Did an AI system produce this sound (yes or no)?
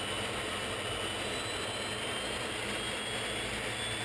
no